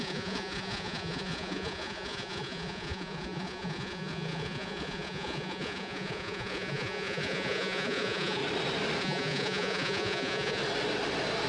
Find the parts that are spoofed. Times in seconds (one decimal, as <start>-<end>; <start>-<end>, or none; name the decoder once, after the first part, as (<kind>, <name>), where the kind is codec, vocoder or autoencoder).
0.0-8.4 (vocoder, Vocos); 9.0-10.6

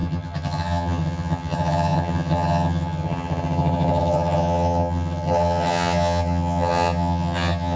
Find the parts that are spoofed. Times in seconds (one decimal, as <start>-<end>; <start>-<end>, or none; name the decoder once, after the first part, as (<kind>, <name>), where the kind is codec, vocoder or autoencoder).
0.0-7.8 (vocoder, HiFi-GAN)

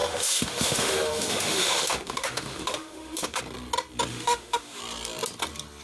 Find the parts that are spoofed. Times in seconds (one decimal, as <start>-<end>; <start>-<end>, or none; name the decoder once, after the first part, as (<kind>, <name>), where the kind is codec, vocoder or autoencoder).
0.0-3.4 (autoencoder, DAC-VAE); 4.1-4.8